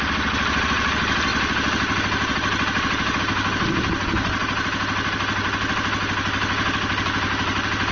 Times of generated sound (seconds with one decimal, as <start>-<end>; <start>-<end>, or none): none